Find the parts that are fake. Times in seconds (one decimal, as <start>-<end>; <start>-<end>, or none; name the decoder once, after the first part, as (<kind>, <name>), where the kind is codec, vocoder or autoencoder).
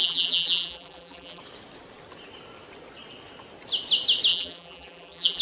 0.0-1.4 (vocoder, BigVGAN v2); 4.3-5.4